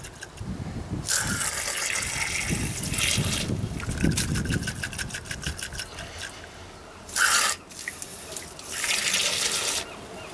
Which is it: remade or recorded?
recorded